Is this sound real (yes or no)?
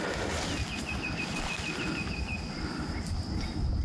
yes